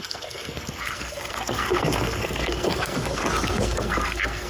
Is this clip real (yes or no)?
no